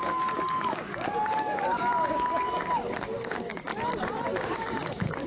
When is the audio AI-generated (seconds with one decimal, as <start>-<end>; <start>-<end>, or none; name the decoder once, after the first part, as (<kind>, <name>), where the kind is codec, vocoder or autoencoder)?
0.0-3.7 (codec, DAC); 4.4-5.3